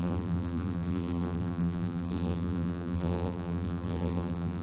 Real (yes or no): no